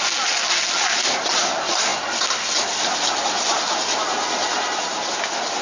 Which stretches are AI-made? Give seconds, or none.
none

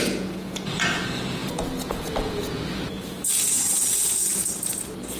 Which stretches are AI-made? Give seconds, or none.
0.0-5.2 (vocoder, Vocos)

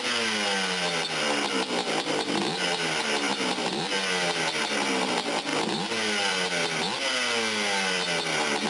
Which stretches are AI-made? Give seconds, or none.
none